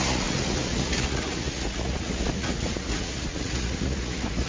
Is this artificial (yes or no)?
yes